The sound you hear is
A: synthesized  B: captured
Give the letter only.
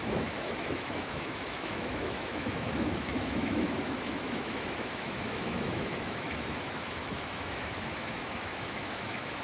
A